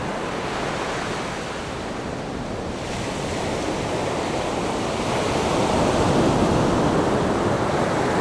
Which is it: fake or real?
real